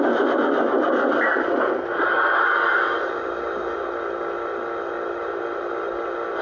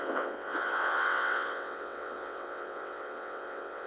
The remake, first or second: second